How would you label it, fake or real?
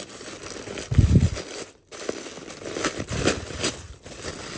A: fake